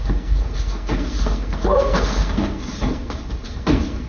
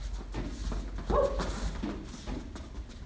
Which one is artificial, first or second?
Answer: first